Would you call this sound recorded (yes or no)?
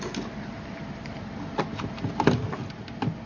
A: yes